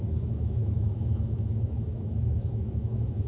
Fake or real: fake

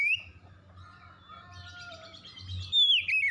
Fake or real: real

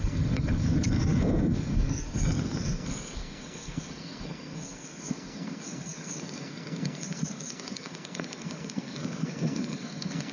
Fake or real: fake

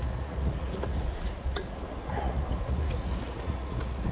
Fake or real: fake